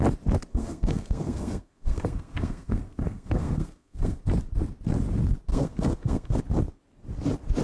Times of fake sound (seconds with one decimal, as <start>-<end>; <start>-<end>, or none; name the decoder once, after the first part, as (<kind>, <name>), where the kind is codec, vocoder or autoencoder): 0.5-4.2 (codec, SNAC); 5.5-6.4